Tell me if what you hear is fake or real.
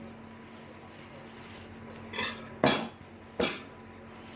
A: real